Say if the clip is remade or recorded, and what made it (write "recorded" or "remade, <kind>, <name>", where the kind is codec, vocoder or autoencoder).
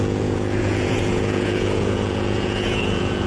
remade, vocoder, Vocos